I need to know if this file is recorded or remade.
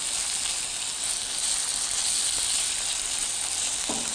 recorded